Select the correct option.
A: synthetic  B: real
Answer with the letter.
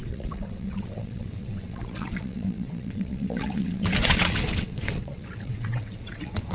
A